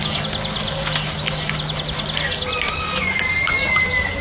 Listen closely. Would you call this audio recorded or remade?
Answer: recorded